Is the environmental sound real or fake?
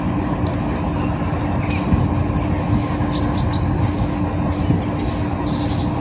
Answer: real